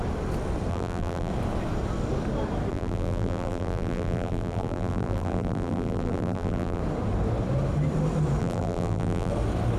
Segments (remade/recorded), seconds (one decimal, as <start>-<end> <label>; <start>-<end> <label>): 0.0-0.7 recorded; 0.7-1.3 remade; 1.3-2.7 recorded; 2.7-6.8 remade; 6.8-8.4 recorded; 8.4-9.3 remade; 9.3-9.8 recorded